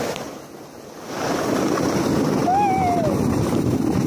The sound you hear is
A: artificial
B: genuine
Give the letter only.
B